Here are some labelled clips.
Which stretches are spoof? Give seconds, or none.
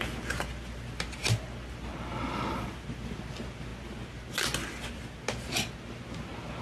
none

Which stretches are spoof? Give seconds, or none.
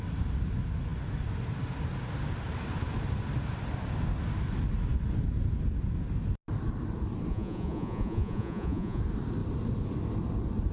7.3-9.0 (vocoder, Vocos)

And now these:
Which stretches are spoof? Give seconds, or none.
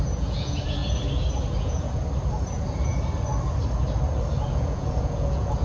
0.0-0.8 (vocoder, Vocos); 1.6-2.0; 4.5-5.6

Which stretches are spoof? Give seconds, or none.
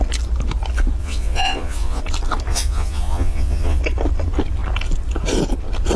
1.0-2.0 (vocoder, Vocos); 2.5-3.8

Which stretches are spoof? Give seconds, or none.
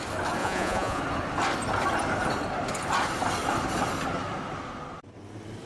0.4-1.0 (vocoder, Vocos)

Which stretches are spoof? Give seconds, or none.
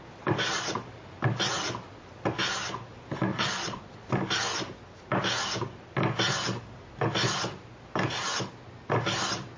3.3-4.1 (vocoder, Vocos)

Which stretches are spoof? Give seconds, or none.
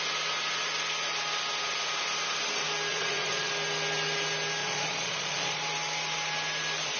2.9-3.5 (vocoder, Vocos); 4.6-5.6